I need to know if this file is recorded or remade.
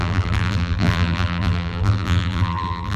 remade